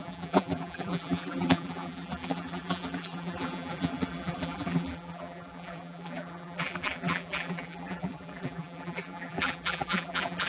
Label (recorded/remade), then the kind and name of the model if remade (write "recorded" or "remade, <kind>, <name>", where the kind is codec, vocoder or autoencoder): remade, vocoder, BigVGAN v2